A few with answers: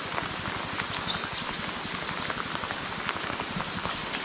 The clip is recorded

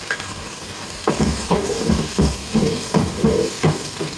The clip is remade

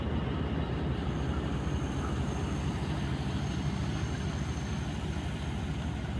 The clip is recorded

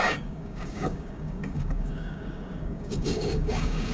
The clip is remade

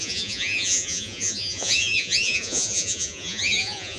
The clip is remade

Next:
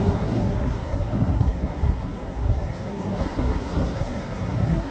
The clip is remade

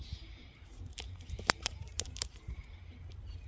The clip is remade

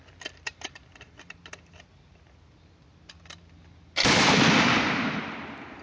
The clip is remade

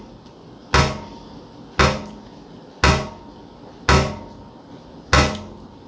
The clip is recorded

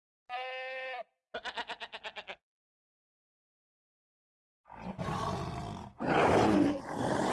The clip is recorded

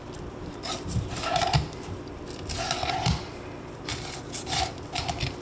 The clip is recorded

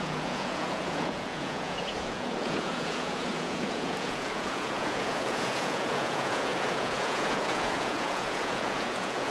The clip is remade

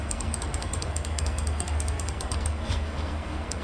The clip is remade